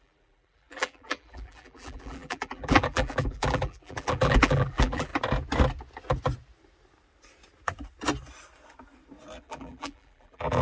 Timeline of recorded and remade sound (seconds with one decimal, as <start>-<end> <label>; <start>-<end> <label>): 0.0-5.1 remade; 5.1-9.4 recorded; 9.4-10.6 remade